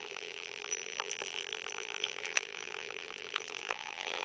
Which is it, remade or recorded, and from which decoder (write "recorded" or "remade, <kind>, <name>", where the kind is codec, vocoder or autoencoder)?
remade, vocoder, BigVGAN v2